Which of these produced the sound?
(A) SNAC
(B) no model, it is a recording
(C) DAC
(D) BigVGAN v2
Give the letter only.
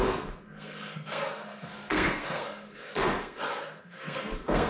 A